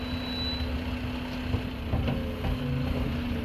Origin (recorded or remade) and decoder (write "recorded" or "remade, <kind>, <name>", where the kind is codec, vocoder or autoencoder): recorded